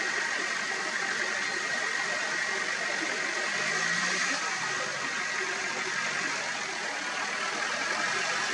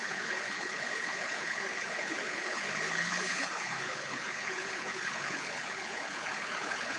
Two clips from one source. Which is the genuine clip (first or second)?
first